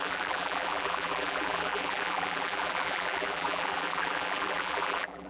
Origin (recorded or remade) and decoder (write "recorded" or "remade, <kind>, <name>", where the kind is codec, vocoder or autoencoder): remade, vocoder, BigVGAN v2